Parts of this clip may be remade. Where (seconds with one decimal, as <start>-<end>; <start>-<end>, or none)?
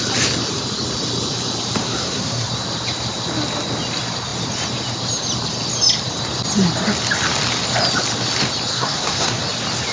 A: 1.8-2.5; 8.7-9.4